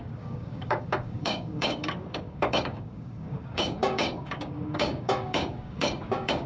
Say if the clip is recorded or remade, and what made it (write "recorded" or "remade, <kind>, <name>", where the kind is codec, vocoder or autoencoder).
remade, codec, DAC